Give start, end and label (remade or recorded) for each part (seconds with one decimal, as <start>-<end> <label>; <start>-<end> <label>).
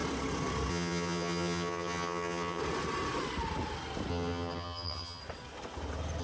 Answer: 0.0-0.7 recorded; 0.7-2.6 remade; 2.6-4.1 recorded; 4.1-5.2 remade; 5.2-6.2 recorded